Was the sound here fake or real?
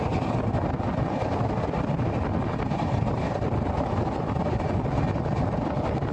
real